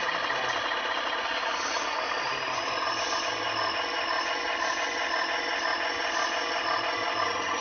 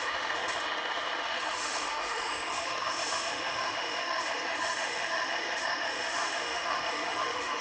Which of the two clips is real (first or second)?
first